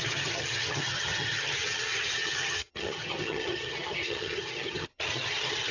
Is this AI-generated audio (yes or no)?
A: yes